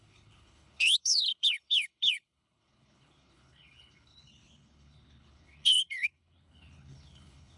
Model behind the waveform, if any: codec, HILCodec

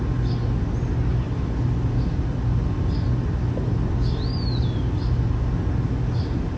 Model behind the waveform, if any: none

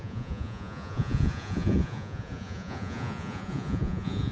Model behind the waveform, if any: vocoder, Vocos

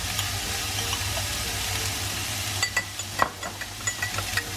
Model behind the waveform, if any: none